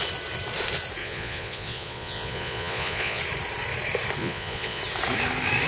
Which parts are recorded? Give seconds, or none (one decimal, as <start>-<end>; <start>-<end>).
0.0-1.0; 3.2-4.2; 4.8-5.7